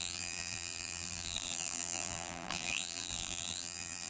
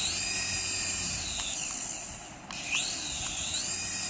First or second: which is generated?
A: first